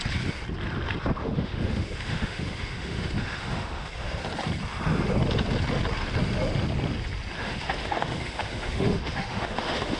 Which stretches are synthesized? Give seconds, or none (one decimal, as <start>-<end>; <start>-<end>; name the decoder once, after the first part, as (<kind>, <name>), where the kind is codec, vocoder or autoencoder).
1.2-4.2 (autoencoder, DAC-VAE); 7.4-10.0